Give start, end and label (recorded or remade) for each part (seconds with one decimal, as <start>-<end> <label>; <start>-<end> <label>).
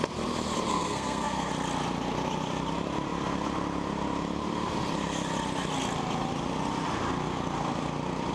0.0-0.7 recorded; 0.7-1.5 remade; 1.5-8.3 recorded